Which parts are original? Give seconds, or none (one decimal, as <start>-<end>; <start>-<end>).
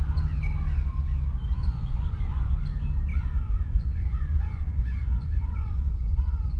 0.0-1.6; 2.5-3.1